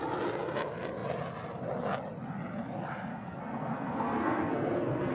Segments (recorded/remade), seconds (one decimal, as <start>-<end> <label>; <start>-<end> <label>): 0.0-3.1 recorded; 3.1-5.1 remade